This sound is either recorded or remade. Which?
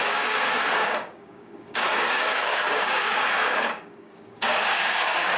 remade